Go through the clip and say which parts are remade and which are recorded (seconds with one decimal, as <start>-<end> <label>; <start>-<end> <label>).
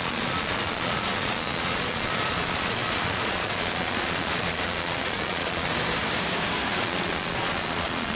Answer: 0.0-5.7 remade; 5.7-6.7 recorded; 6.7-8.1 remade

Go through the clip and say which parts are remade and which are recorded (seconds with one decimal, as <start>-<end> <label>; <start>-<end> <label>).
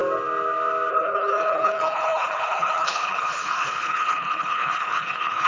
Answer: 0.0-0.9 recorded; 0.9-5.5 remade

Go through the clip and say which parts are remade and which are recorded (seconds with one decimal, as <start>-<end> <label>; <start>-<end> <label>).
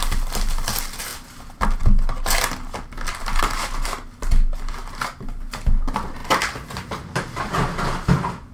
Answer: 0.0-8.5 recorded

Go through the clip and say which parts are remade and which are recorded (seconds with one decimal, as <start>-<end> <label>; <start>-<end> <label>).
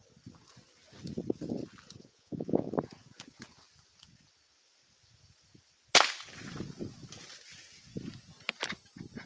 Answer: 0.0-2.0 recorded; 2.0-2.7 remade; 2.7-9.3 recorded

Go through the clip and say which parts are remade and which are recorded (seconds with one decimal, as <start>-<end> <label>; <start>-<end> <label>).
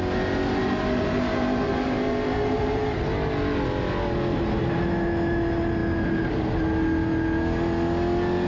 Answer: 0.0-0.6 recorded; 0.6-2.8 remade; 2.8-8.5 recorded